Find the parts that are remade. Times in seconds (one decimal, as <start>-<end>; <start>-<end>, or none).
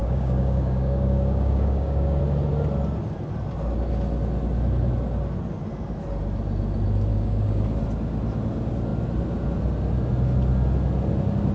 0.0-2.2; 7.1-7.6